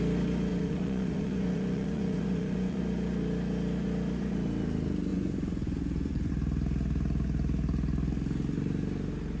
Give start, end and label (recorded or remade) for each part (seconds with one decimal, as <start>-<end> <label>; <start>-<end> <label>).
0.0-0.5 recorded; 0.5-2.8 remade; 2.8-5.1 recorded; 5.1-6.3 remade; 6.3-9.4 recorded